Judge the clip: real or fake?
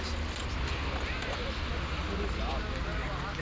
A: real